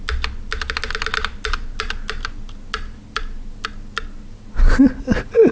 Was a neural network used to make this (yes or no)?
no